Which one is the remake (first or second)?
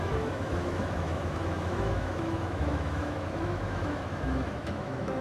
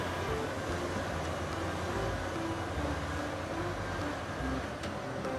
first